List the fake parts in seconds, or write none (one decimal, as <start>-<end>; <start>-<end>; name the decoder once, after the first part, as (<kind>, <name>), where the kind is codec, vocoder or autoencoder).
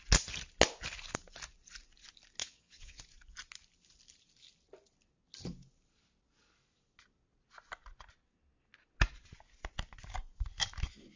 2.4-3.0 (vocoder, WaveNeXt)